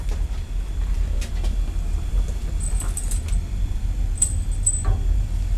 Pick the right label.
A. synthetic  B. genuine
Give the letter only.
B